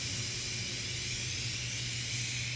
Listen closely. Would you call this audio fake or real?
real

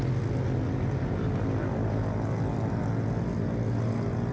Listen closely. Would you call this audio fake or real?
real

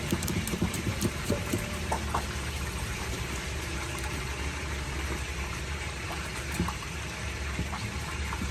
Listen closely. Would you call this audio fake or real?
fake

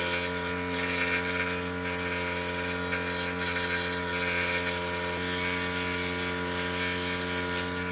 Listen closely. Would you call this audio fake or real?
real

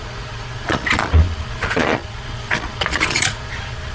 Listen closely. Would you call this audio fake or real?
fake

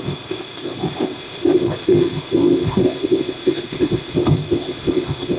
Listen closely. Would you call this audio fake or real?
fake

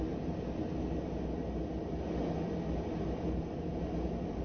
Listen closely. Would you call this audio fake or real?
real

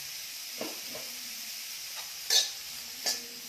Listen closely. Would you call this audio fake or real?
real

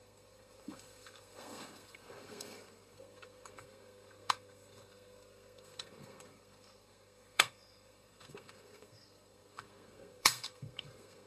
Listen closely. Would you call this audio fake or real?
fake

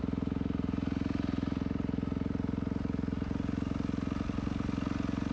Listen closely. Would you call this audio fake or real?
real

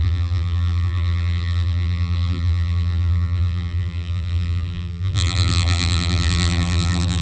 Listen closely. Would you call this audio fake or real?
fake